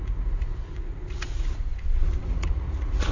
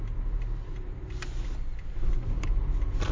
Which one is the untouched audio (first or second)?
second